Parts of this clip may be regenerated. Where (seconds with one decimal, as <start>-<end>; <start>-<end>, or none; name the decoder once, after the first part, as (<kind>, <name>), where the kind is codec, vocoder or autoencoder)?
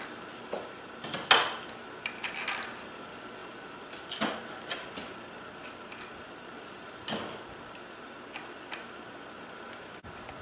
none